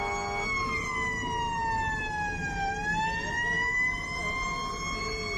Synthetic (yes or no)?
no